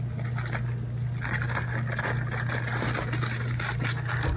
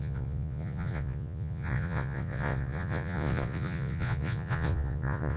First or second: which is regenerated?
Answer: second